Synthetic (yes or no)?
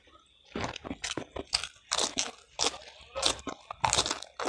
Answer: no